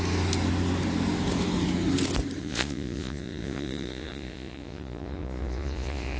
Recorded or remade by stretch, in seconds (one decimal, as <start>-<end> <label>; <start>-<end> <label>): 0.0-2.4 recorded; 2.4-6.2 remade